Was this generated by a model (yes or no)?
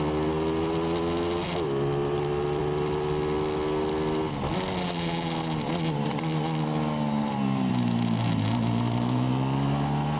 no